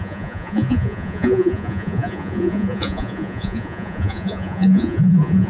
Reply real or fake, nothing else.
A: fake